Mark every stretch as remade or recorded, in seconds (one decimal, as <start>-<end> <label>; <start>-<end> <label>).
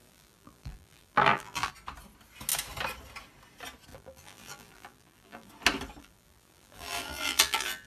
0.0-1.7 remade; 1.7-3.9 recorded; 3.9-5.5 remade; 5.5-6.0 recorded; 6.0-7.9 remade